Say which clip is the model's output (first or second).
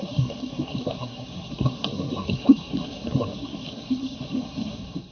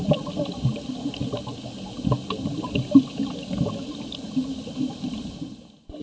first